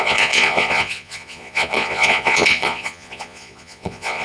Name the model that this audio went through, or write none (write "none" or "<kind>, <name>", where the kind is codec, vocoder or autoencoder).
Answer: vocoder, Vocos